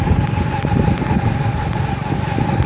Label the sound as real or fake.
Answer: real